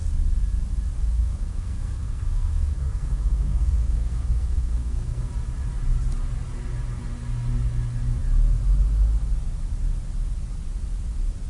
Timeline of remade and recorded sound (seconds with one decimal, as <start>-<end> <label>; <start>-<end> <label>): 0.0-1.0 recorded; 1.0-5.3 remade; 5.3-11.5 recorded